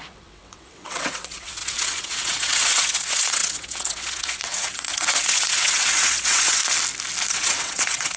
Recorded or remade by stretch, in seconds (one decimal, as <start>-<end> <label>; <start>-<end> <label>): 0.0-6.6 remade; 6.6-7.3 recorded; 7.3-8.2 remade

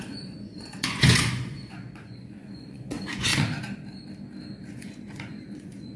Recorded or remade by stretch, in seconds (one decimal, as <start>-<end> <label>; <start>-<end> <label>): 0.0-3.3 remade; 3.3-4.7 recorded; 4.7-6.0 remade

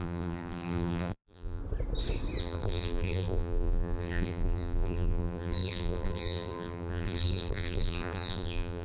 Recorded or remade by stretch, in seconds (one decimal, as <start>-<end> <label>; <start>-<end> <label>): 0.0-1.6 remade; 1.6-2.4 recorded; 2.4-8.8 remade

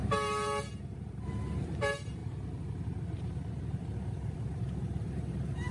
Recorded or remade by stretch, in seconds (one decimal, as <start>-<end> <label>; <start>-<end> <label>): 0.0-5.7 remade

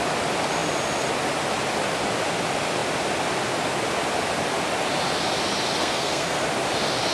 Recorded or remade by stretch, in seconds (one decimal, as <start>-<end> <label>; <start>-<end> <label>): 0.0-5.8 recorded; 5.8-6.4 remade; 6.4-7.1 recorded

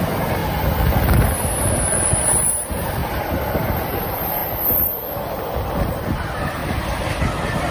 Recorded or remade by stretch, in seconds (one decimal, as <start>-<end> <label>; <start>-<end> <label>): 0.0-0.4 remade; 0.4-1.5 recorded; 1.5-3.0 remade; 3.0-3.8 recorded; 3.8-4.4 remade; 4.4-5.7 recorded; 5.7-7.7 remade

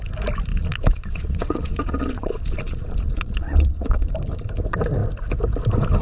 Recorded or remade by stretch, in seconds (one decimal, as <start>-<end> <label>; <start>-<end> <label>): 0.0-0.5 recorded; 0.5-4.1 remade; 4.1-6.0 recorded

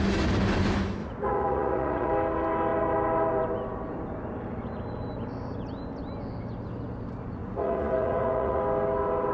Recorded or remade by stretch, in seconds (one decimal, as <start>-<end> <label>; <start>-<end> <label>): 0.0-1.0 recorded; 1.0-2.1 remade; 2.1-7.4 recorded; 7.4-8.6 remade; 8.6-9.3 recorded